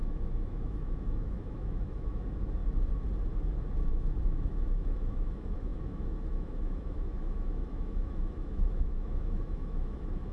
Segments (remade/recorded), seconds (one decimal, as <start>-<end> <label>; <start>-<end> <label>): 0.0-2.6 remade; 2.6-3.9 recorded; 3.9-10.3 remade